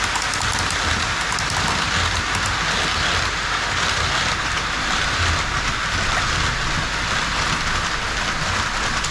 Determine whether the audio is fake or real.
real